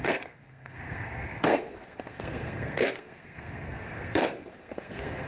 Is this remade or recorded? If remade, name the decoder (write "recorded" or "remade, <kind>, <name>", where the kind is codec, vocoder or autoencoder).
remade, codec, SNAC